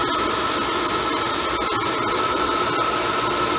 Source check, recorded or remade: recorded